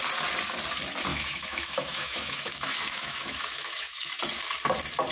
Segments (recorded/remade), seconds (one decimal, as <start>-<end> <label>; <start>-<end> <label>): 0.0-1.1 recorded; 1.1-4.2 remade; 4.2-5.1 recorded